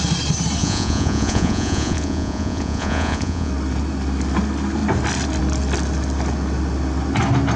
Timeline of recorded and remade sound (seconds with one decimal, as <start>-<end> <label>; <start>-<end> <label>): 0.0-0.6 recorded; 0.6-3.5 remade; 3.5-7.6 recorded

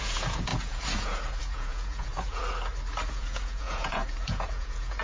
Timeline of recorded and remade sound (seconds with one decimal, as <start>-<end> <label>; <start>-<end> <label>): 0.0-2.4 remade; 2.4-3.1 recorded; 3.1-5.0 remade

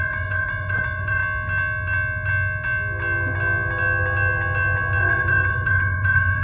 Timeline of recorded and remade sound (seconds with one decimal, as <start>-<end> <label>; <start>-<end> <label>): 0.0-1.2 remade; 1.2-5.0 recorded; 5.0-6.4 remade

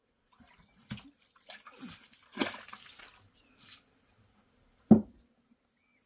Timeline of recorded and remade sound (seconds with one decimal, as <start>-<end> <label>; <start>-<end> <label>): 0.0-6.1 recorded

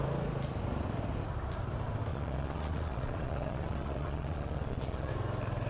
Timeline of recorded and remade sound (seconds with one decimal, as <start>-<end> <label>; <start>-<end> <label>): 0.0-2.1 recorded; 2.1-5.1 remade; 5.1-5.7 recorded

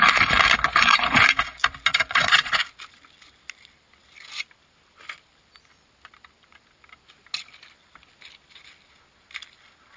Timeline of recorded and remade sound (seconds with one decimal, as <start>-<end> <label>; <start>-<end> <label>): 0.0-1.9 recorded; 1.9-2.6 remade; 2.6-10.0 recorded

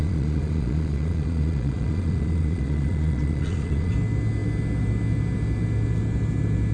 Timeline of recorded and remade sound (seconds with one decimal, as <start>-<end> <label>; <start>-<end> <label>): 0.0-3.9 remade; 3.9-6.7 recorded